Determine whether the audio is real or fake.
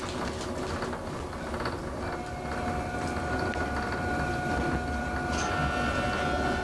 real